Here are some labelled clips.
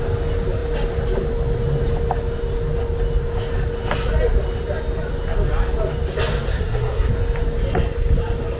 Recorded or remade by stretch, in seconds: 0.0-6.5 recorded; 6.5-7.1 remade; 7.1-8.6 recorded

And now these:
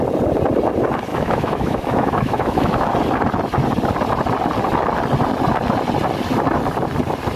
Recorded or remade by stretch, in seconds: 0.0-1.1 recorded; 1.1-2.9 remade; 2.9-7.4 recorded

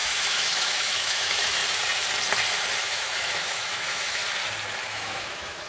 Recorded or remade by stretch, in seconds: 0.0-1.6 remade; 1.6-2.8 recorded; 2.8-4.2 remade; 4.2-4.8 recorded; 4.8-5.7 remade

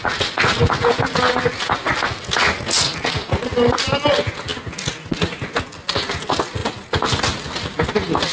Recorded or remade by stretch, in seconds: 0.0-8.3 recorded

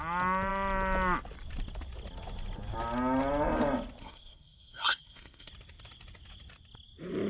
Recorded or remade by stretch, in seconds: 0.0-4.0 recorded; 4.0-5.5 remade; 5.5-7.3 recorded

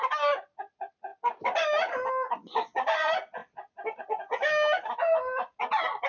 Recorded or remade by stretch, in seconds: 0.0-6.1 recorded

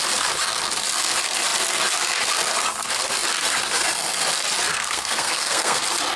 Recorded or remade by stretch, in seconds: 0.0-4.7 recorded; 4.7-5.8 remade; 5.8-6.2 recorded